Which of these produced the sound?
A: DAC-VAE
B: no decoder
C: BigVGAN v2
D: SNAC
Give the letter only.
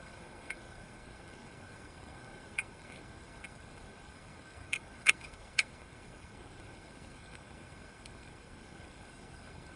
D